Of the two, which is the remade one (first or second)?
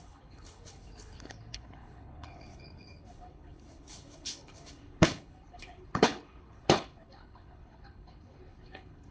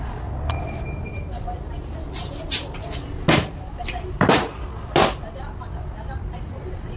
first